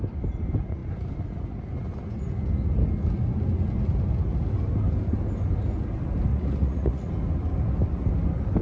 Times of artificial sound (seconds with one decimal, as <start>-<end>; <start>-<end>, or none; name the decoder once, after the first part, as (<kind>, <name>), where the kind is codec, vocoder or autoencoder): 6.3-7.1 (vocoder, Vocos)

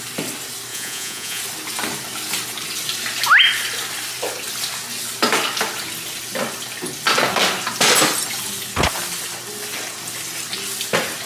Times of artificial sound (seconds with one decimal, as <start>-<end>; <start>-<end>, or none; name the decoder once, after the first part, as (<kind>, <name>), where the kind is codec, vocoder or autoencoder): 0.7-1.4 (vocoder, Vocos)

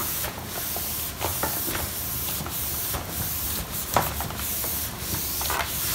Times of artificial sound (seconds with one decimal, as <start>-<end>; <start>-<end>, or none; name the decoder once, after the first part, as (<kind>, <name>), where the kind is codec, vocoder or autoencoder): 0.0-0.6 (vocoder, Vocos)

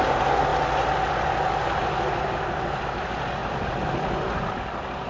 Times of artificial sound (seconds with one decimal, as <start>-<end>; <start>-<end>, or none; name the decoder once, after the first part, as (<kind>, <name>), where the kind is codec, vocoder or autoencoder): none